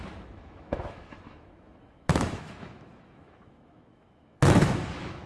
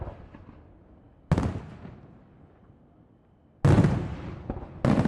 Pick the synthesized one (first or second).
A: first